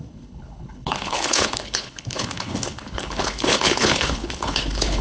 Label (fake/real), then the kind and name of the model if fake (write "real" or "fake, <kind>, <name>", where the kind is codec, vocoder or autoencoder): fake, codec, HILCodec